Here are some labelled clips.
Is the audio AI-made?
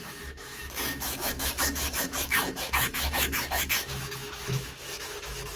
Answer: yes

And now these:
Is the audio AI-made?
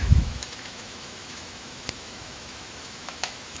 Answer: yes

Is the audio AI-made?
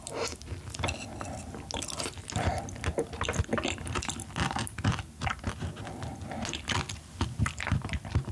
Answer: no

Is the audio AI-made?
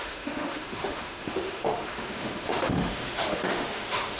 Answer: yes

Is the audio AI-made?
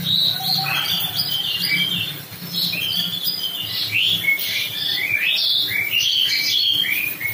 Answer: no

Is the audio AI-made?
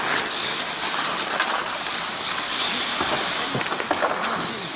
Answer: no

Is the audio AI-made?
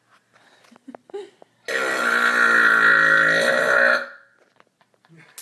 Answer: no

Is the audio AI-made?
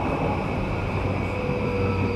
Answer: no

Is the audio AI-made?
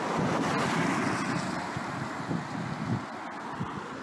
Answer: no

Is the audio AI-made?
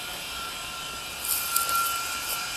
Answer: no